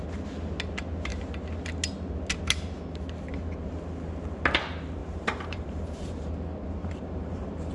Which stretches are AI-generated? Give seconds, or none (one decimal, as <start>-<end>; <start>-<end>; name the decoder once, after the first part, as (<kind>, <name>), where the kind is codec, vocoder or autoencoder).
5.0-6.3 (vocoder, BigVGAN v2); 6.8-7.7